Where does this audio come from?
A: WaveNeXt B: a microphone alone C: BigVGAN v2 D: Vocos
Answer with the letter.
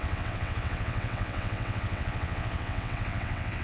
A